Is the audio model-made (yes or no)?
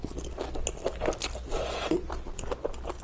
no